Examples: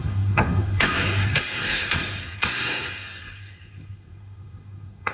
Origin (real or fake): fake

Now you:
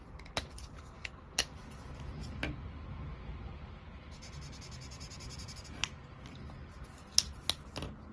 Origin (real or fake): real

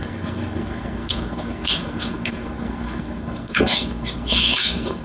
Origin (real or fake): fake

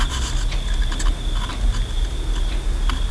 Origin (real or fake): real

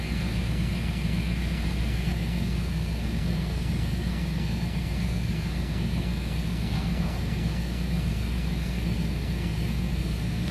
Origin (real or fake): fake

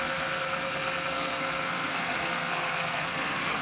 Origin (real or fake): fake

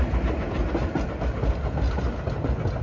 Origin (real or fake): real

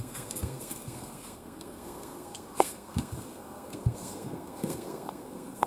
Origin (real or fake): fake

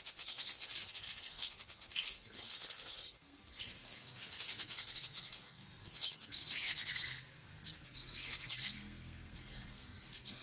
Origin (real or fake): fake